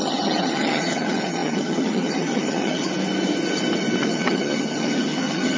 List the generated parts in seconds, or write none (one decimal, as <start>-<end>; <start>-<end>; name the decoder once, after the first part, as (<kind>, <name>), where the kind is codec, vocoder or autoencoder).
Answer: 0.0-2.8 (vocoder, HiFi-GAN); 4.0-5.6